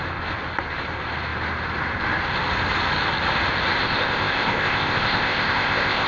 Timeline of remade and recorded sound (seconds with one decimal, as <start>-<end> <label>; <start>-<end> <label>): 0.0-3.8 recorded; 3.8-6.1 remade